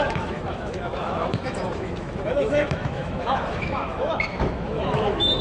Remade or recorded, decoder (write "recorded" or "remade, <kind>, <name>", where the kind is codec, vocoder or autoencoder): remade, autoencoder, DAC-VAE